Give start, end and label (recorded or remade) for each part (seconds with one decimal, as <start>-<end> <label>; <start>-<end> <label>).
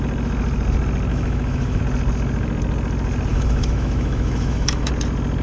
0.0-1.1 recorded; 1.1-1.8 remade; 1.8-3.3 recorded; 3.3-4.9 remade; 4.9-5.4 recorded